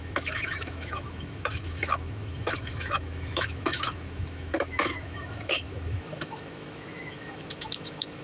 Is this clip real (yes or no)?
no